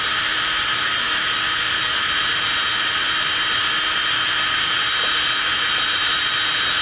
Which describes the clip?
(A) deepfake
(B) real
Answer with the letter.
A